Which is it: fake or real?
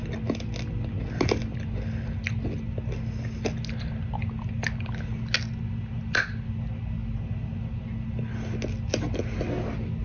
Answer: real